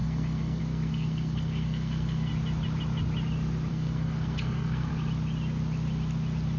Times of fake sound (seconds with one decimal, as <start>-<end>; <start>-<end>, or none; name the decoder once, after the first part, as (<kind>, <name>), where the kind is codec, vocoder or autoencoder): 0.0-2.3 (codec, SNAC); 3.7-4.9